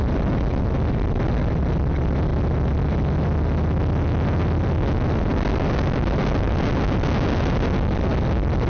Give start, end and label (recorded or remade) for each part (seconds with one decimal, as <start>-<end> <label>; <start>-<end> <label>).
0.0-8.7 recorded

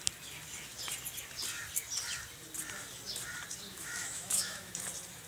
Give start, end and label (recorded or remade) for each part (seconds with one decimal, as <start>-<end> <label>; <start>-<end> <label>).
0.0-3.7 recorded; 3.7-4.7 remade; 4.7-5.3 recorded